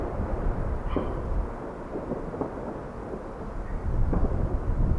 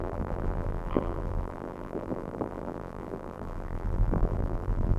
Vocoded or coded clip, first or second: second